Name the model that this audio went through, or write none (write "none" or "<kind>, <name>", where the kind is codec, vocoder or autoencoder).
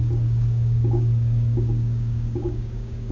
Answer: codec, DAC